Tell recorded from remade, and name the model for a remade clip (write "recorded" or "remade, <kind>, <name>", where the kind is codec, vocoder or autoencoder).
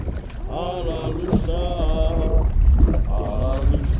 recorded